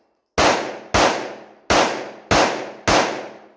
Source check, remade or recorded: recorded